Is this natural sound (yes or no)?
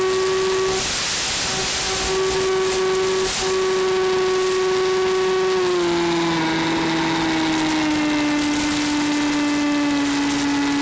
yes